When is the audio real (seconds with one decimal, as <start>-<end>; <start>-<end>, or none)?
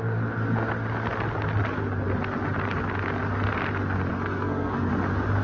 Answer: 0.0-4.1; 4.9-5.4